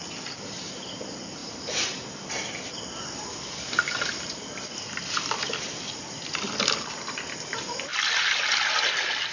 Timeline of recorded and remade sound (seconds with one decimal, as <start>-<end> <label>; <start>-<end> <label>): 0.0-9.3 recorded